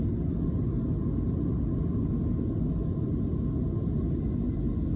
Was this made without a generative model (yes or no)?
yes